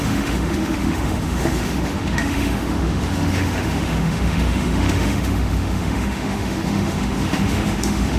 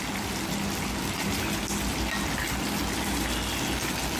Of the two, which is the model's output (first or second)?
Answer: first